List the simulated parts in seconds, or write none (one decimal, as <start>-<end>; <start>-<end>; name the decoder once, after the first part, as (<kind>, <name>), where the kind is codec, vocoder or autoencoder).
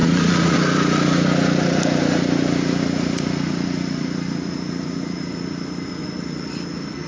0.0-0.6 (vocoder, Vocos)